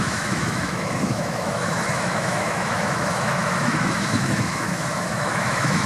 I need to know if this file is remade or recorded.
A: remade